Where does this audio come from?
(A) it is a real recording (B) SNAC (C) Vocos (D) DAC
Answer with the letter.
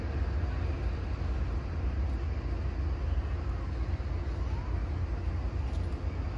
A